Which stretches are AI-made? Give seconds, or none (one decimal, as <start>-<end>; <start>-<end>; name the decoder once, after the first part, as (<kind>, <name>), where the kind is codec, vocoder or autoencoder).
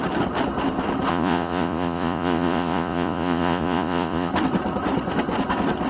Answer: 1.1-4.3 (vocoder, Vocos)